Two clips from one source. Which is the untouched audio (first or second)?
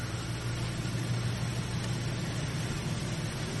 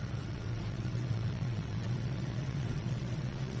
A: first